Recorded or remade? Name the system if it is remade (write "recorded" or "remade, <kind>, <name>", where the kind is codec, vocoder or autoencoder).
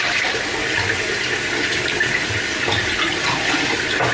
recorded